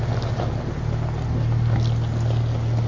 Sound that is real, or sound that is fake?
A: real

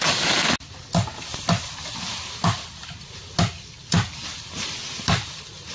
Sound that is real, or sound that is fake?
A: real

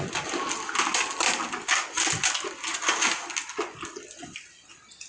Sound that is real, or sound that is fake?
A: real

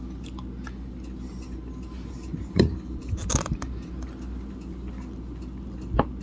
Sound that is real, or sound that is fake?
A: real